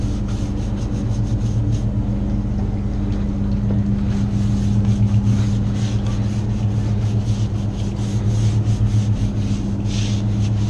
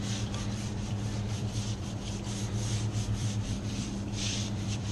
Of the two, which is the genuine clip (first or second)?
first